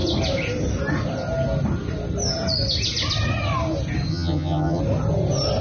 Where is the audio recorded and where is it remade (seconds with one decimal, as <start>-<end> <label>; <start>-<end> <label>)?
0.0-4.1 recorded; 4.1-4.8 remade; 4.8-5.6 recorded